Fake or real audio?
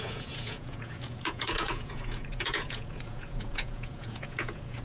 fake